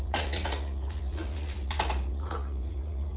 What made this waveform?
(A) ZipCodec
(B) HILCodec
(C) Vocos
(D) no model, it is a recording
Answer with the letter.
C